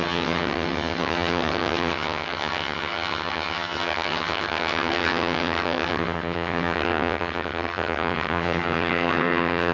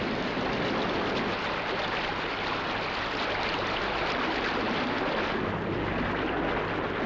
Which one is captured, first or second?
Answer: second